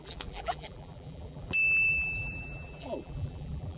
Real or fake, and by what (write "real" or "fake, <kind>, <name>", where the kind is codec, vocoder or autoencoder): fake, vocoder, BigVGAN v2